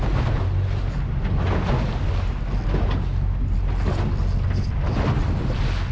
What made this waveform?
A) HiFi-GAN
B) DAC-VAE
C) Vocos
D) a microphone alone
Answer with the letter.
D